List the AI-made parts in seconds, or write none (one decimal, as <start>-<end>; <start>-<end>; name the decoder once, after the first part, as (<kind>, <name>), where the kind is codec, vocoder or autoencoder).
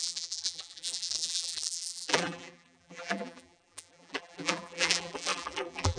0.0-6.0 (vocoder, BigVGAN v2)